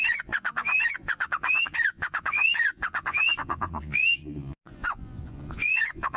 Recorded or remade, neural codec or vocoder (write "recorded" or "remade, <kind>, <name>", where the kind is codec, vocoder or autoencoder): remade, vocoder, Vocos